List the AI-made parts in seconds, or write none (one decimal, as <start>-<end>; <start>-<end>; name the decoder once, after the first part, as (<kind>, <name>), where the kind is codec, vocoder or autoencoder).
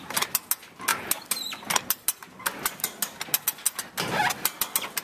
none